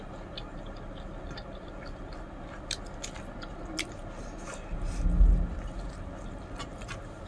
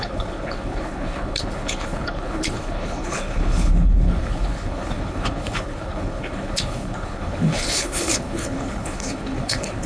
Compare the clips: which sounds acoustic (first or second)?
first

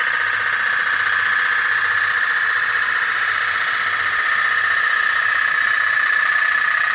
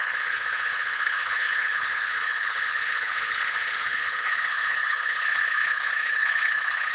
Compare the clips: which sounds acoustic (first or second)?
first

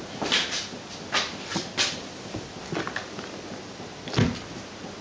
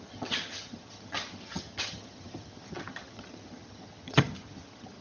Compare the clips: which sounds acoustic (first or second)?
first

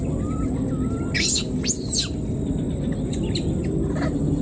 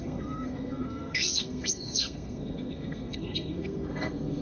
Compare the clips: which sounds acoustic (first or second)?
first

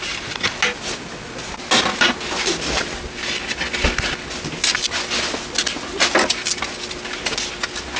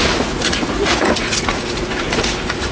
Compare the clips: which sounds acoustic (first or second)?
first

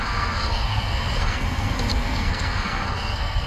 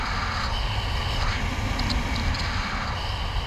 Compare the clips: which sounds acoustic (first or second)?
second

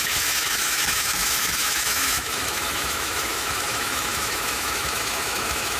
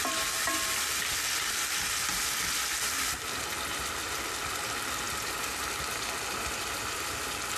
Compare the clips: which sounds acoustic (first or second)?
second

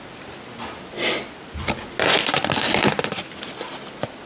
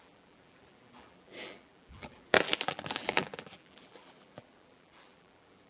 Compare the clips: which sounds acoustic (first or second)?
first